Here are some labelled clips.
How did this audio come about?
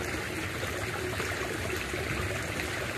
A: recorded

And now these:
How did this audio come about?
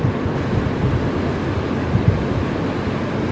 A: recorded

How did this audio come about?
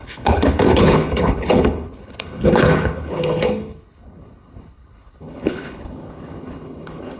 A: remade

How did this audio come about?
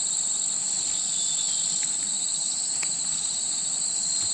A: recorded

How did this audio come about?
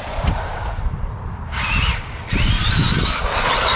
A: recorded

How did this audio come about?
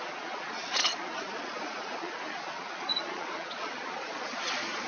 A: remade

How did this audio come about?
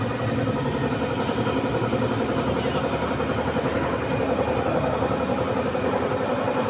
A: recorded